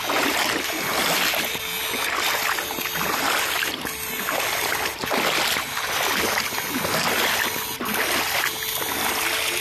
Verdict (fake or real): real